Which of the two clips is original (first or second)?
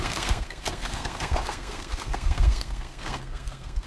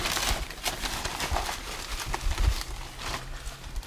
second